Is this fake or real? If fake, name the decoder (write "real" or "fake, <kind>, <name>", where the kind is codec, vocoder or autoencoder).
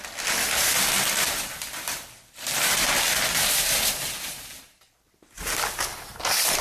real